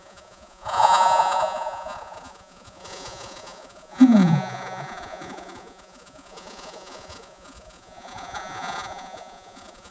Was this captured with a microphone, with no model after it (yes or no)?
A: no